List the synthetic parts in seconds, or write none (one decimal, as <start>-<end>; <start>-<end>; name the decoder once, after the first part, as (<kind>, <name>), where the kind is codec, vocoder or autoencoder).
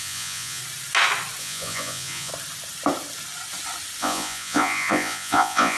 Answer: 0.0-0.6 (vocoder, Vocos); 1.4-2.3; 4.0-5.8